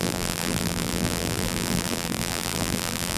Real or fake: fake